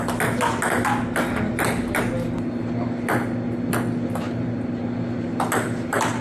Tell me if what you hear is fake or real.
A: real